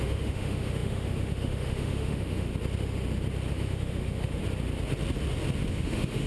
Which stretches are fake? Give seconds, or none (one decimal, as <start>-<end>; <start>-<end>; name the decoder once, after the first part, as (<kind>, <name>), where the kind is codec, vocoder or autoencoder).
0.0-2.5 (autoencoder, DAC-VAE); 3.5-4.4; 5.7-6.3